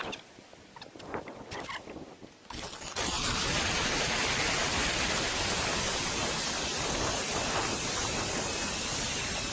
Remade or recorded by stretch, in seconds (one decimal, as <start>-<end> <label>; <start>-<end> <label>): 0.0-9.5 recorded